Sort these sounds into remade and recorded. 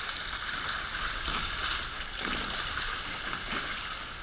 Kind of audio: recorded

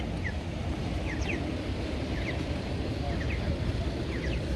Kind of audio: recorded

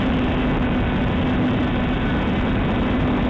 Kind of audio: recorded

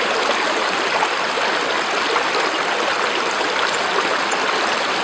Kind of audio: recorded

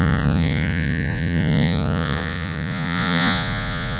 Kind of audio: remade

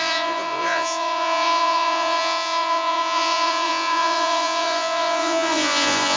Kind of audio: remade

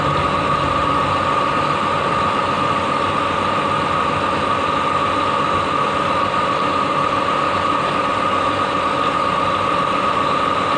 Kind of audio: recorded